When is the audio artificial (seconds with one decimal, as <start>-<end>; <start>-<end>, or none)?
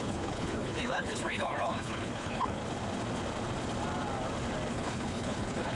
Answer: 0.0-2.6; 4.7-5.7